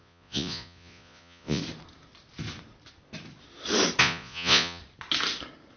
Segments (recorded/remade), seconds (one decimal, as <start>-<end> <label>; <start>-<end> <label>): 0.0-1.6 remade; 1.6-4.0 recorded; 4.0-4.8 remade; 4.8-5.8 recorded